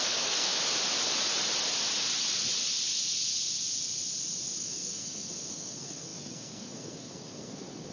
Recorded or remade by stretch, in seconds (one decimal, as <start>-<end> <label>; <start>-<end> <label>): 0.0-0.5 remade; 0.5-4.6 recorded; 4.6-7.9 remade